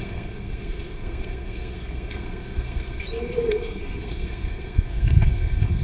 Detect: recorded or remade remade